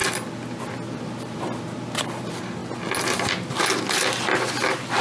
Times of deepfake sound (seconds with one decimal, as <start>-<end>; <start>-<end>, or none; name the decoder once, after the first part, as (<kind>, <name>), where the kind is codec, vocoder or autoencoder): none